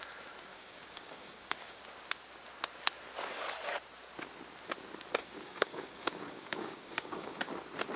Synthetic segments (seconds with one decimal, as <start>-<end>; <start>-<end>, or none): 0.5-1.8; 5.2-7.5